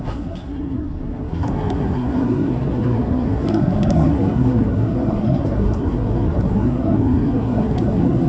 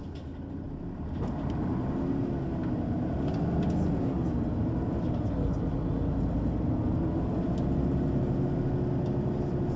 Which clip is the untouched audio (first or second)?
second